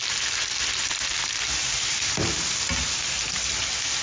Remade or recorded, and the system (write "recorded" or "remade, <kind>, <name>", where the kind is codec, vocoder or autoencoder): recorded